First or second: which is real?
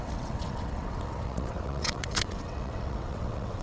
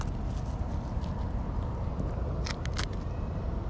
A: second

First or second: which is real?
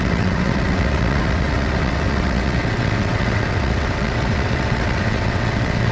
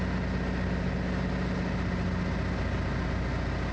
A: second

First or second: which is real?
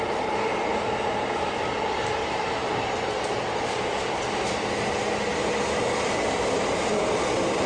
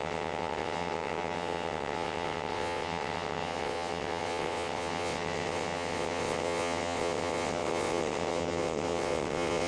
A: first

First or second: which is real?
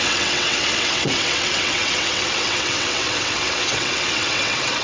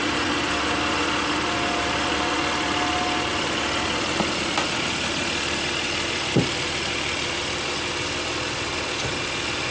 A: second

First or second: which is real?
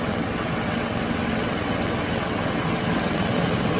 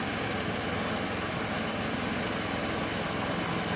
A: second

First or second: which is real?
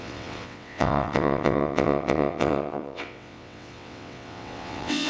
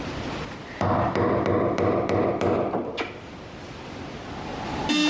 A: second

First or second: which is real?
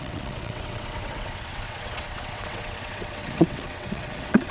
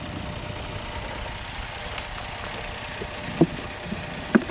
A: second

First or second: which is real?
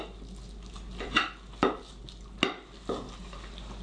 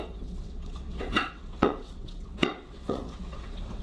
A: first